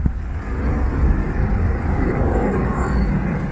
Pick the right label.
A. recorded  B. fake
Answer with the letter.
B